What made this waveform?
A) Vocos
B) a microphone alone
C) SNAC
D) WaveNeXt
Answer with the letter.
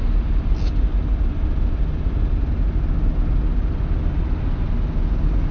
B